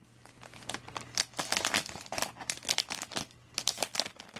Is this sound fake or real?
real